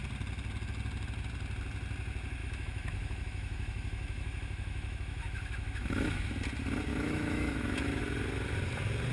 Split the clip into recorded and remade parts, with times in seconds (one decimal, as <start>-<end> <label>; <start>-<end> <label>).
0.0-2.4 recorded; 2.4-6.3 remade; 6.3-6.9 recorded; 6.9-8.0 remade; 8.0-9.1 recorded